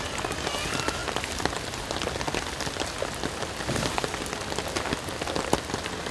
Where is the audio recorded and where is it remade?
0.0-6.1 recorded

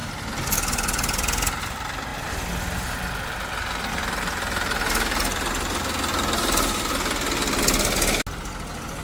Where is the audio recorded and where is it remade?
0.0-9.0 recorded

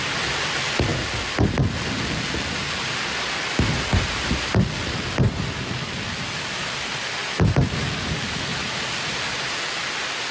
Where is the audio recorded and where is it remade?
0.0-10.3 recorded